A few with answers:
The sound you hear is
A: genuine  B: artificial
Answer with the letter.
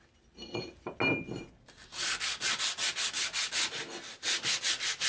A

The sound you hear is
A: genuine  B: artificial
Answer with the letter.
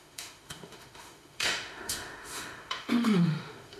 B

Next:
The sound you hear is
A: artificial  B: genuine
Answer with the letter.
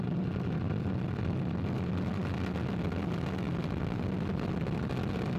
B